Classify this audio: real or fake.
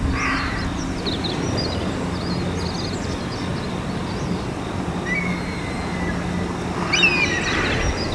real